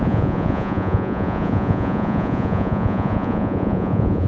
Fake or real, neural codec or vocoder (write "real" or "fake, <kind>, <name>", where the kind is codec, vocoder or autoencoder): fake, vocoder, Vocos